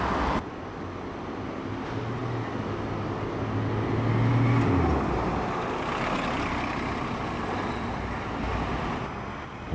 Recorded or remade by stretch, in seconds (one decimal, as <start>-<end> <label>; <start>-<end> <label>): 0.0-9.7 recorded